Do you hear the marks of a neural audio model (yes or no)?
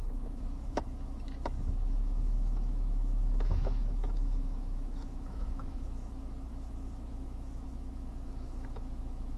yes